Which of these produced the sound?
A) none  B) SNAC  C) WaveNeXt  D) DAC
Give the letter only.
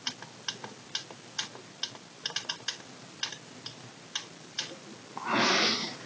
A